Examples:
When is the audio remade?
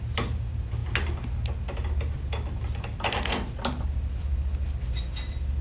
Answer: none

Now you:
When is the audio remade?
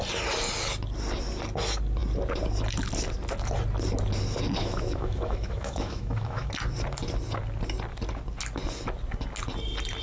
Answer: 4.6-6.5 (autoencoder, DAC-VAE)